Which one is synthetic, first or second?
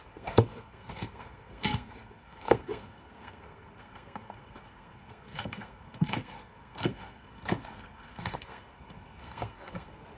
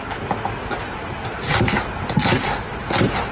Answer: first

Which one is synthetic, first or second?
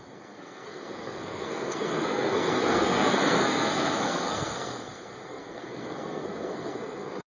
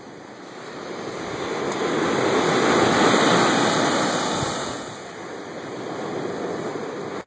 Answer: first